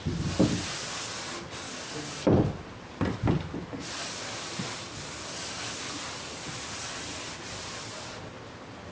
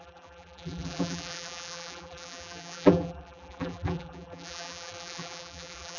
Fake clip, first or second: second